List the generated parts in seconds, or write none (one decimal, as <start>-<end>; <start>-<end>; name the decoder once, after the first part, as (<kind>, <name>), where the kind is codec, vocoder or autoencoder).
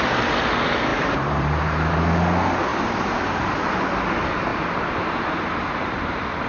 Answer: 0.9-2.0 (vocoder, BigVGAN v2); 2.7-3.7; 4.5-6.5